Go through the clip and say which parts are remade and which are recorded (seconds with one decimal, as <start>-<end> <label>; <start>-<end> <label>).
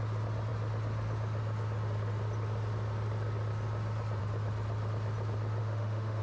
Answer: 0.0-5.6 recorded; 5.6-6.2 remade